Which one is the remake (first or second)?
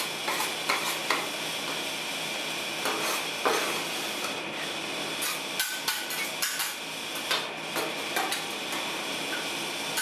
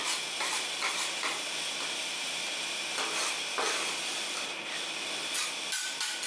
second